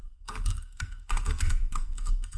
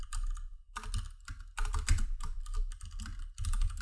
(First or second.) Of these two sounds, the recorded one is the second